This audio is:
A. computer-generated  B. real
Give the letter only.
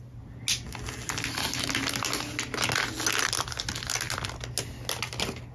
B